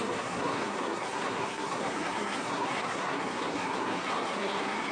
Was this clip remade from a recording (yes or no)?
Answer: yes